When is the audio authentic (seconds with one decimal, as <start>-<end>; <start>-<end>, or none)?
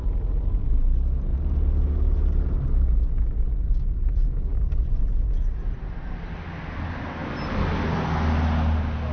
0.0-4.5; 5.0-9.1